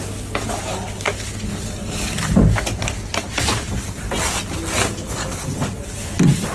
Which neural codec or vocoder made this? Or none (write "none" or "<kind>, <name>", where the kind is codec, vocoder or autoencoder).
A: none